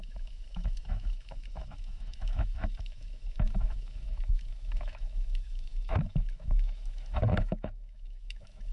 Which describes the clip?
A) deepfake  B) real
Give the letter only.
A